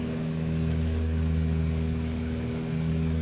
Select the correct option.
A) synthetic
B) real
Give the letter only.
A